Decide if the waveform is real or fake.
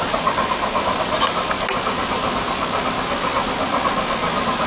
real